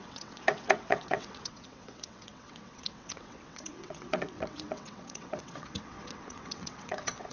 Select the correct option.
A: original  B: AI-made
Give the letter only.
B